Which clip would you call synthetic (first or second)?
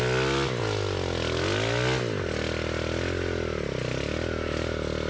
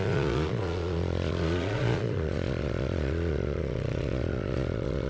second